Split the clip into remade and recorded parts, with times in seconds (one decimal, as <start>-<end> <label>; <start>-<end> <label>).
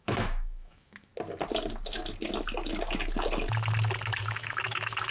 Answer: 0.0-1.1 remade; 1.1-4.2 recorded; 4.2-5.1 remade